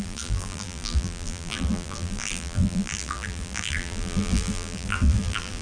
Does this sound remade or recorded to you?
remade